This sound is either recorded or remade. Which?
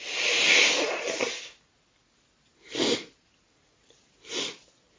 recorded